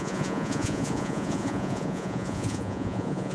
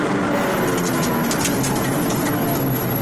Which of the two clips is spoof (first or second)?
first